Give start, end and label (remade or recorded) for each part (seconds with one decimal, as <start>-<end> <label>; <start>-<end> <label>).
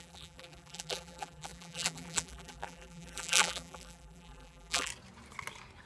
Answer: 0.0-4.9 remade; 4.9-5.9 recorded